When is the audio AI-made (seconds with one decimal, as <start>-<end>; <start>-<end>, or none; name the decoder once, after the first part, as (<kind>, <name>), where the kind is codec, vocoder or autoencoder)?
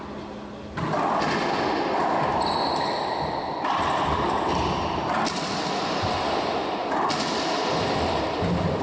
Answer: none